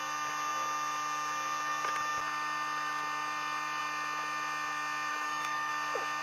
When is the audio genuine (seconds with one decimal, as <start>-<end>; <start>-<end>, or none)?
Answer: 0.0-5.1; 5.7-6.2